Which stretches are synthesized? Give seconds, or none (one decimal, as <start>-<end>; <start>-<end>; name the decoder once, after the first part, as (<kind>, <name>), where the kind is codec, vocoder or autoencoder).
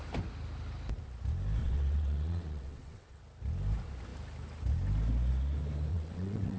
1.6-3.2 (vocoder, WaveNeXt); 5.9-6.6